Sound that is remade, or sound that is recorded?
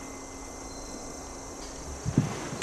recorded